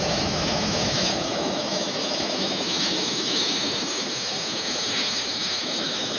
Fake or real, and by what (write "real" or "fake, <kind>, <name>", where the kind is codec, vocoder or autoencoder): fake, autoencoder, DAC-VAE